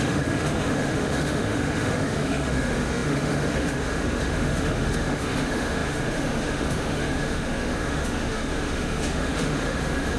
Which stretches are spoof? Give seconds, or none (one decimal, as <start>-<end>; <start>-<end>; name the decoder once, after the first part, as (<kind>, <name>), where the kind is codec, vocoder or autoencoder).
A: 0.0-10.2 (autoencoder, DAC-VAE)